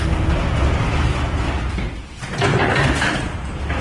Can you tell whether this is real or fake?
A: real